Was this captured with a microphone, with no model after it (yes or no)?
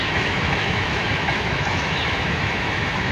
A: no